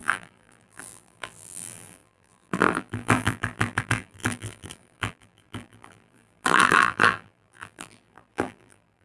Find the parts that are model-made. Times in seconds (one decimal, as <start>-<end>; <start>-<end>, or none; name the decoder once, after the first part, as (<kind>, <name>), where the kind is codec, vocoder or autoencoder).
0.0-9.0 (vocoder, BigVGAN v2)